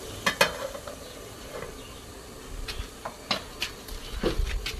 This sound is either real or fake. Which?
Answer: real